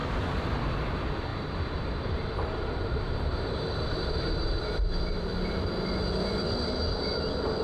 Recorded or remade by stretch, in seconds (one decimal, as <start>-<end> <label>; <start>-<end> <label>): 0.0-0.8 remade; 0.8-1.3 recorded; 1.3-5.2 remade; 5.2-7.6 recorded